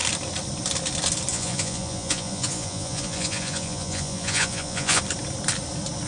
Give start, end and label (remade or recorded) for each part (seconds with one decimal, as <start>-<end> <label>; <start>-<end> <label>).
0.0-1.3 recorded; 1.3-5.0 remade; 5.0-6.1 recorded